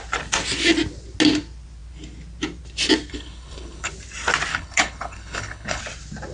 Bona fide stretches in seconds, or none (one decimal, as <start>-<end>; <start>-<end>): 0.0-3.1; 3.9-4.5; 5.8-6.3